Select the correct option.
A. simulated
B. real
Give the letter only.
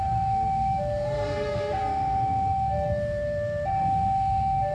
A